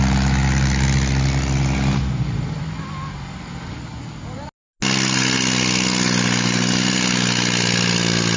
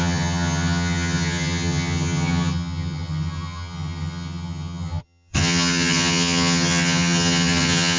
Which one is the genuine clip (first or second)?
first